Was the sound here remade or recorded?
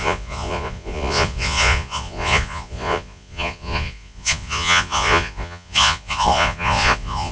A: remade